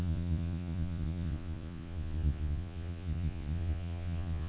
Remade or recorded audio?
remade